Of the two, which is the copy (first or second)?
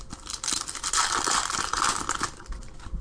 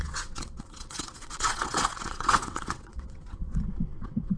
second